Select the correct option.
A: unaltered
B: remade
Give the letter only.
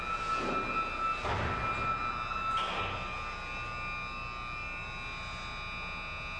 A